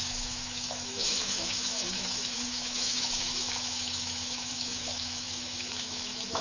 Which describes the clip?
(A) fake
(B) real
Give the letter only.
A